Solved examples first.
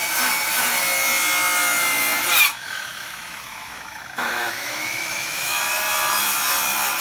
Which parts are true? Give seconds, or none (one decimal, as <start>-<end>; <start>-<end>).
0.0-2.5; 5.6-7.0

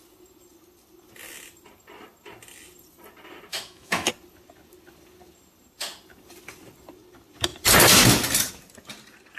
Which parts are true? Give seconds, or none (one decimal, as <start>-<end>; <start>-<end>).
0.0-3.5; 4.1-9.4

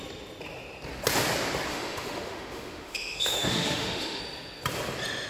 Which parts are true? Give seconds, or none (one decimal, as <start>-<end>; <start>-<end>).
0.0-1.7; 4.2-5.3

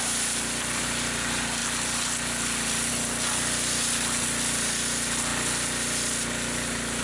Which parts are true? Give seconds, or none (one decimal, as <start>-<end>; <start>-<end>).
0.0-7.0

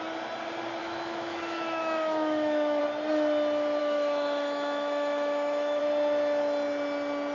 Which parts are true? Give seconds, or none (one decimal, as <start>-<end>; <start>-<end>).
0.0-0.8; 2.8-3.8; 5.8-7.3